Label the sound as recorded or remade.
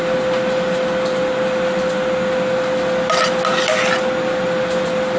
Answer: recorded